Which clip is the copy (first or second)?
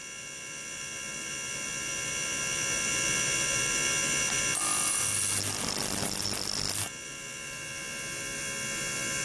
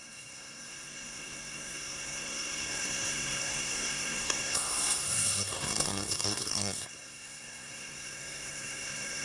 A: second